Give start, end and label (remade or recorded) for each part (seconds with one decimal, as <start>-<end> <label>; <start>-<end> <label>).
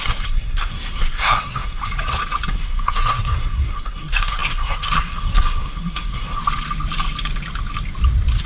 0.0-1.8 remade; 1.8-2.5 recorded; 2.5-6.4 remade; 6.4-8.5 recorded